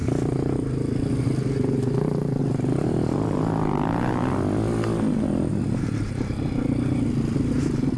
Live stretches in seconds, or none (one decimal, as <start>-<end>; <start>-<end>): 0.0-8.0